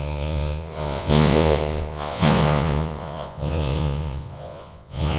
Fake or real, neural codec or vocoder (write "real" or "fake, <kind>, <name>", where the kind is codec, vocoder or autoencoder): fake, vocoder, Vocos